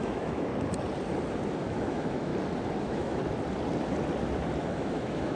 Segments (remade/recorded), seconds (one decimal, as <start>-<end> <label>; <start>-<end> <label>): 0.0-0.5 remade; 0.5-1.5 recorded; 1.5-2.3 remade; 2.3-2.8 recorded; 2.8-3.2 remade; 3.2-4.6 recorded; 4.6-5.4 remade